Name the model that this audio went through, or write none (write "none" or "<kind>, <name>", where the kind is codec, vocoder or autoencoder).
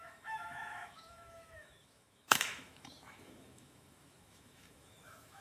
autoencoder, DAC-VAE